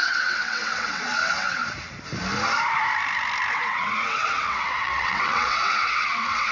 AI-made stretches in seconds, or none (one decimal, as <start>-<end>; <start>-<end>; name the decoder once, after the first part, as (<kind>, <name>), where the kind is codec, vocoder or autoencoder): 0.0-1.6 (vocoder, WaveNeXt); 3.5-6.5